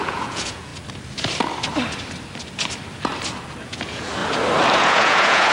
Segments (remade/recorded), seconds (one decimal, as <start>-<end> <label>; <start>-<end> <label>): 0.0-0.7 remade; 0.7-3.6 recorded; 3.6-4.2 remade; 4.2-4.7 recorded; 4.7-5.5 remade

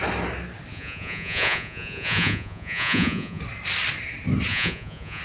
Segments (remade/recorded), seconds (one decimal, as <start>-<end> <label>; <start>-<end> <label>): 0.0-0.7 recorded; 0.7-3.4 remade; 3.4-4.5 recorded; 4.5-5.2 remade

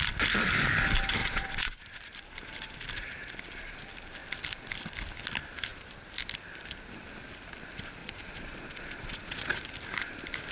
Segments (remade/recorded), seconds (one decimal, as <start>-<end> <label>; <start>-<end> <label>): 0.0-1.2 recorded; 1.2-1.8 remade; 1.8-8.0 recorded; 8.0-9.6 remade; 9.6-10.5 recorded

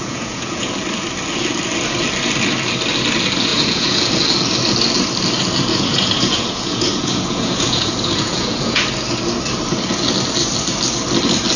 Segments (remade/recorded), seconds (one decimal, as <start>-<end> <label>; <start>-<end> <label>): 0.0-0.7 remade; 0.7-3.5 recorded; 3.5-4.1 remade; 4.1-5.7 recorded; 5.7-8.8 remade; 8.8-11.6 recorded